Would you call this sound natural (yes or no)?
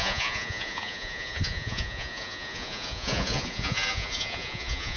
no